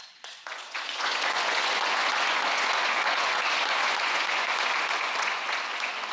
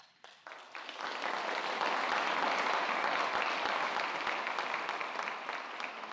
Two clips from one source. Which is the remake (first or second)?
first